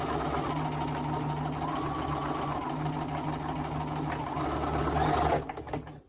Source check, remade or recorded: recorded